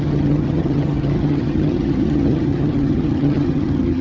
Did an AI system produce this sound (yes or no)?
yes